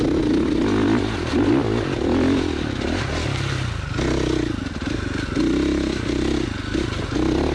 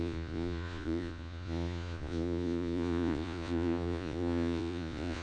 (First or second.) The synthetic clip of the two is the second